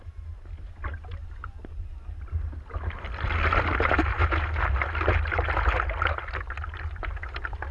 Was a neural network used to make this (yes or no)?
no